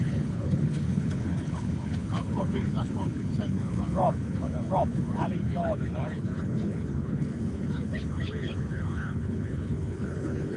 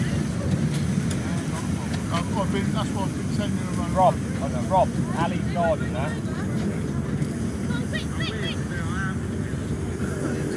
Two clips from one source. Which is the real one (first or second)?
second